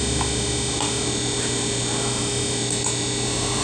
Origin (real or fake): real